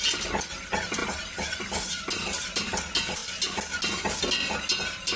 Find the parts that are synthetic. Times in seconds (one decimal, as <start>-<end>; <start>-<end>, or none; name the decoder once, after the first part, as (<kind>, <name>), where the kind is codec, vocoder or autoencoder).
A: 1.0-1.6 (vocoder, BigVGAN v2)